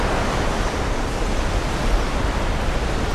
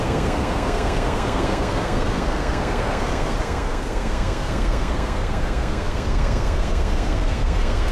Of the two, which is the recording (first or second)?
first